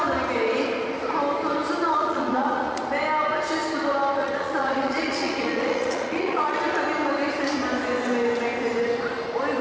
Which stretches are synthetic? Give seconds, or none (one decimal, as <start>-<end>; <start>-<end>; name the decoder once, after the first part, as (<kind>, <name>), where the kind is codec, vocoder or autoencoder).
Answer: 1.8-2.8 (vocoder, Vocos); 4.2-6.6